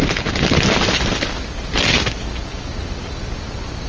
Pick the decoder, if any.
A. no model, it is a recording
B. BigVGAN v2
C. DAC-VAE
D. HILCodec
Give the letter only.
A